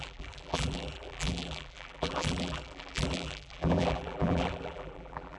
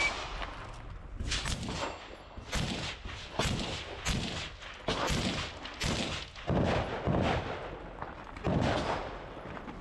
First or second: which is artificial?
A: first